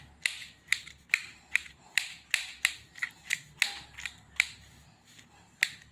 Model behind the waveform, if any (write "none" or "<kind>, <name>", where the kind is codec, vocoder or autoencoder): none